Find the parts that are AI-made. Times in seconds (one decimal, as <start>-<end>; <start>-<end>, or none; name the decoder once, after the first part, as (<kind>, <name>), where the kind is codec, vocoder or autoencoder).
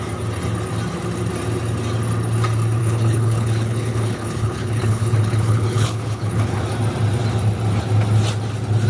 2.8-6.6 (codec, HILCodec)